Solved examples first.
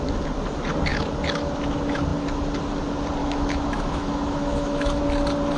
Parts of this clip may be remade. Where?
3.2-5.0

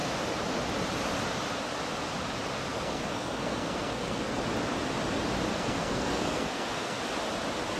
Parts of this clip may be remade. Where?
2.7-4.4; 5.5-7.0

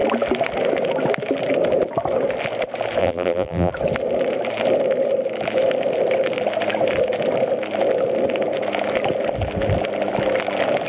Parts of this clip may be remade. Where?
3.0-3.7